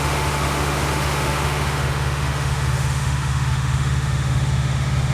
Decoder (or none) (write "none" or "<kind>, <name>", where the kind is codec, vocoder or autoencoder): autoencoder, DAC-VAE